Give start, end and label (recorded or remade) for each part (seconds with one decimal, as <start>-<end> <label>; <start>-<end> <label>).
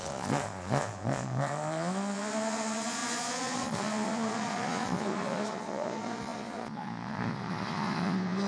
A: 0.0-8.5 remade